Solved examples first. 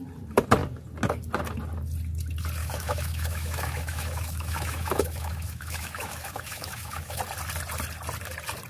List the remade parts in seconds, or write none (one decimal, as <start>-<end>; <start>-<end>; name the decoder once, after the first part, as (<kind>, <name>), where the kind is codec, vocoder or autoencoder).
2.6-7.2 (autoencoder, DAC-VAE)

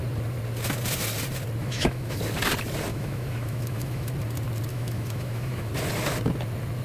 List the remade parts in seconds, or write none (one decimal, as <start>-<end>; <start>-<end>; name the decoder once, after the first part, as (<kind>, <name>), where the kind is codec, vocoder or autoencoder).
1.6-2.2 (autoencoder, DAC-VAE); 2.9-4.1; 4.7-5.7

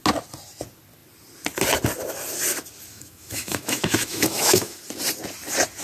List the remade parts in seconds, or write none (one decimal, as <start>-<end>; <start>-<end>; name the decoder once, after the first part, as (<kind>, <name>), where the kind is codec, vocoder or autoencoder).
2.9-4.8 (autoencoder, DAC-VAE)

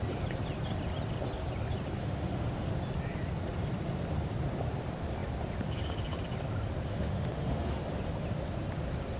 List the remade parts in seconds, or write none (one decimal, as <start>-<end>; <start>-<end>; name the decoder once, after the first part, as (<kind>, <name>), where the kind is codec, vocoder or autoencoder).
2.0-2.7 (autoencoder, DAC-VAE); 6.9-7.8

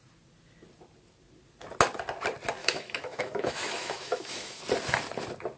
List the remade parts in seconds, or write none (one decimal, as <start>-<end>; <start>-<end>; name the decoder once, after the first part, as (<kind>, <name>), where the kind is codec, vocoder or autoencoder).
2.6-4.6 (autoencoder, DAC-VAE)